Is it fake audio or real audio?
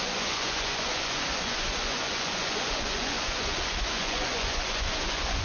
fake